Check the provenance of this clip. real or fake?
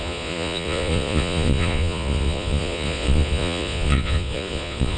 fake